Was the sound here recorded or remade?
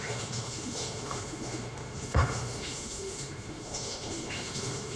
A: remade